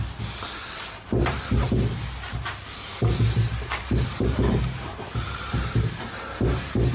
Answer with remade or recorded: recorded